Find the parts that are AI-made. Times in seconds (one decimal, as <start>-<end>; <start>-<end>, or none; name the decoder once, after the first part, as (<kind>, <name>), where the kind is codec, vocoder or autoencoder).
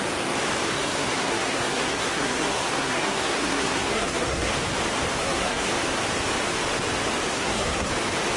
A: 0.7-4.5 (codec, SNAC); 5.2-5.7; 7.3-7.9